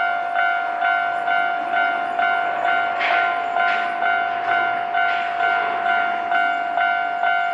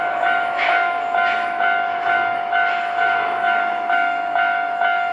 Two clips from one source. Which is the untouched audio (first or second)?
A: first